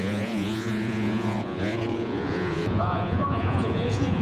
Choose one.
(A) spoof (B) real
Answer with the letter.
A